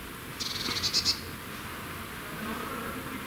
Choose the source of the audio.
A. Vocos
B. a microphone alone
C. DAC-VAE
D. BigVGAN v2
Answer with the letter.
B